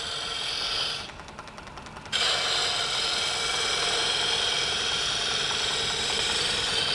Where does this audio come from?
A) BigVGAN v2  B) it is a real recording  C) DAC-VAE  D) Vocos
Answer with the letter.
B